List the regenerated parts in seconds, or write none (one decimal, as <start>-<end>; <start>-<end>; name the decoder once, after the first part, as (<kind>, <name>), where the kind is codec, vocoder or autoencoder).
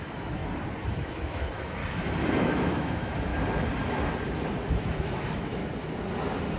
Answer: 0.0-0.4 (autoencoder, DAC-VAE); 0.9-1.8; 2.4-3.3; 4.7-5.6